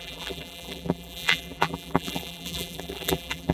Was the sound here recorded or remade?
remade